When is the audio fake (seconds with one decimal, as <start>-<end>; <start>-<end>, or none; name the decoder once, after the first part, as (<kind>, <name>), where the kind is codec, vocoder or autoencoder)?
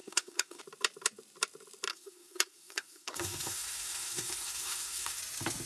0.0-0.6 (codec, SNAC); 1.9-5.2